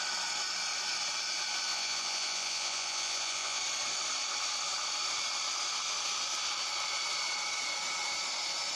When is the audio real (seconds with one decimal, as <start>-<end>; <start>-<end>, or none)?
0.0-1.7; 3.6-8.8